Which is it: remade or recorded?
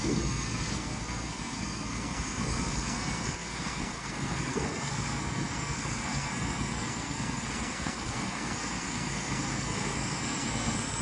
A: remade